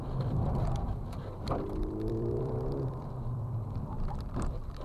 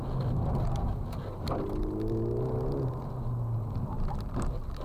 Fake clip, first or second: first